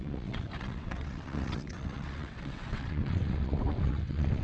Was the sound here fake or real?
fake